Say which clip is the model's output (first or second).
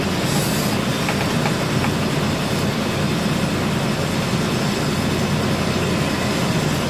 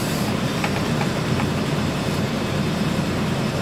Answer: second